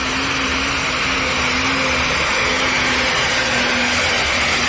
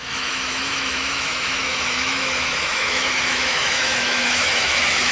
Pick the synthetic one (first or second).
second